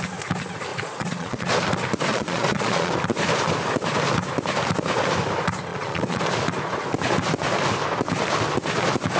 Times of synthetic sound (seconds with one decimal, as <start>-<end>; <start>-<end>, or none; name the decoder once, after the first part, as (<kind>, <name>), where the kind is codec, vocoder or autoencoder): 0.7-1.5 (vocoder, Vocos); 2.1-2.9; 5.7-6.2